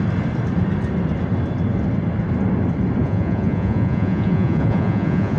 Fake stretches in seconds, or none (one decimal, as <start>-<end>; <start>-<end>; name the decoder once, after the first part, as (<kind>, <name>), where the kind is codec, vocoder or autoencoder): 3.0-5.4 (vocoder, Vocos)